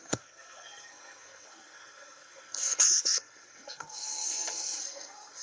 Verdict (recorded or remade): remade